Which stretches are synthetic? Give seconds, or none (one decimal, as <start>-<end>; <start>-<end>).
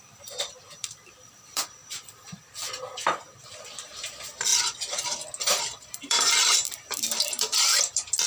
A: 0.0-2.4; 3.5-4.5; 5.6-8.3